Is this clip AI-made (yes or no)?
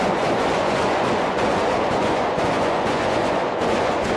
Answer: yes